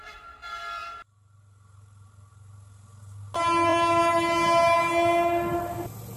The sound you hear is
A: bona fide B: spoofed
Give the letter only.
A